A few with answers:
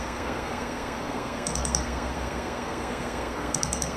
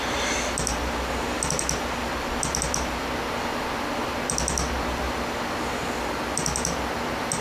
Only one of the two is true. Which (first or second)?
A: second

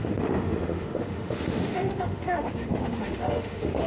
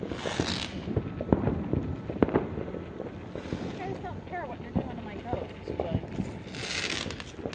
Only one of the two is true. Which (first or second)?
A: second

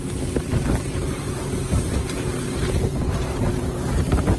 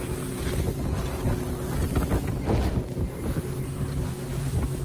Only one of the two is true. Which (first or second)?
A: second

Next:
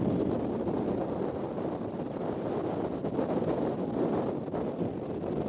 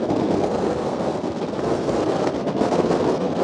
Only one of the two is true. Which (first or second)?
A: first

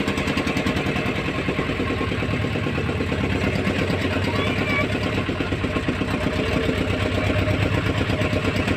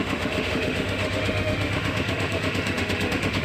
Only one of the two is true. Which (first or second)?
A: first